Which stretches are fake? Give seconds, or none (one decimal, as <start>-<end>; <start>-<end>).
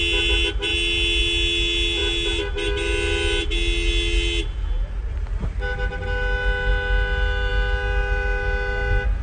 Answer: none